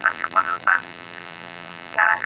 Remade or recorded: remade